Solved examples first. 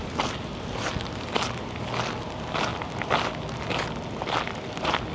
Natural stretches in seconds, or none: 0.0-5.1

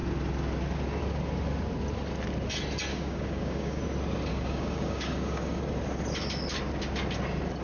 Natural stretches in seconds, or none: 0.0-2.9; 3.8-4.3; 5.6-7.6

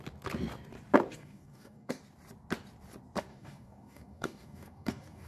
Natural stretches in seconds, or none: 0.0-1.1; 2.0-3.3

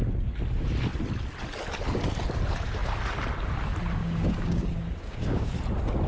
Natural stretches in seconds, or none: 0.0-4.0; 5.5-6.1

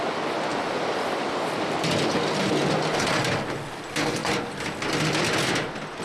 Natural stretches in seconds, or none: 0.0-6.0